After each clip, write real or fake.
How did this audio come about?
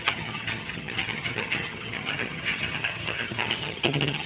fake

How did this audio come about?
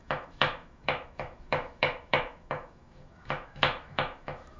fake